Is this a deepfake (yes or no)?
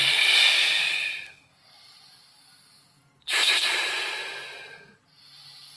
no